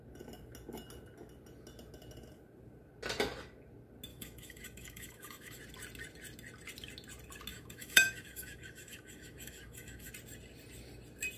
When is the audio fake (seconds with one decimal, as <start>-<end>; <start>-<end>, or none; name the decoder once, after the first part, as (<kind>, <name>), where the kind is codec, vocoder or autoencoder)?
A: 4.1-5.6 (autoencoder, DAC-VAE); 7.5-10.1